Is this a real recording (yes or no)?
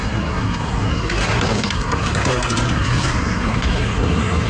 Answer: no